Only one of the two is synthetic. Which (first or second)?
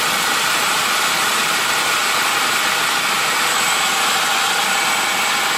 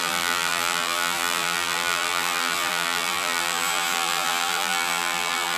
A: second